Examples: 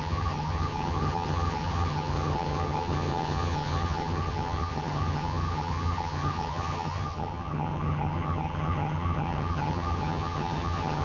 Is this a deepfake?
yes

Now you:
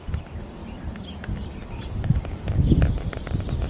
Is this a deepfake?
no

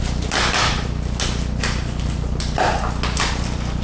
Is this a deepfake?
no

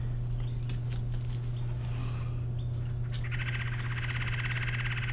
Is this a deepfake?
no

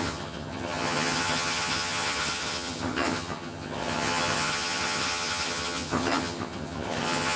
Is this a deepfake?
yes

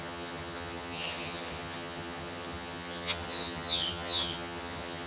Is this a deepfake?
yes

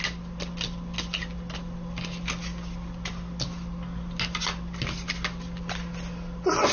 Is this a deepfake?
no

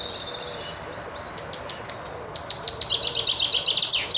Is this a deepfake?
no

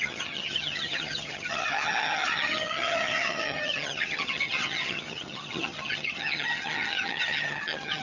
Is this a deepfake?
yes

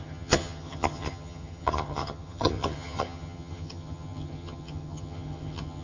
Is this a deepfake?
yes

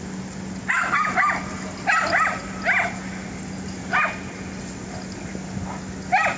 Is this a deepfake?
no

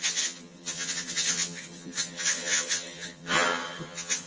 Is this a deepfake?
yes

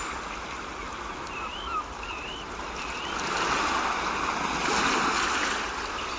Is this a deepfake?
no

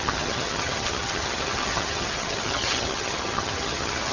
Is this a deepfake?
yes